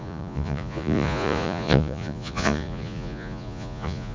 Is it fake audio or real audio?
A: fake